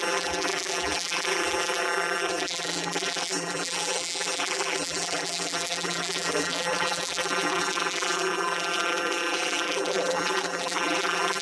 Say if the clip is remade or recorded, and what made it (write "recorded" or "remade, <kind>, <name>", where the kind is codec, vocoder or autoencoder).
remade, vocoder, BigVGAN v2